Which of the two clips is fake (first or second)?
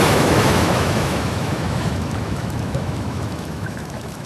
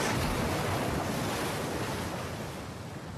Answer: first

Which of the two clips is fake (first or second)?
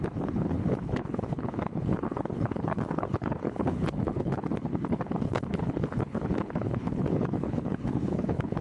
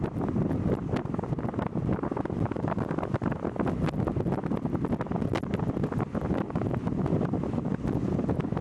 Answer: first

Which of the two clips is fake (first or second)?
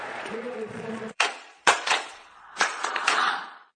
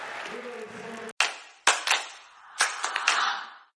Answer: first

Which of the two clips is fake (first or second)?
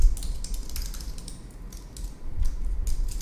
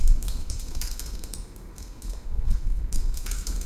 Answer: second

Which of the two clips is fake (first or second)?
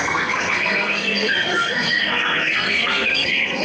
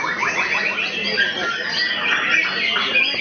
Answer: first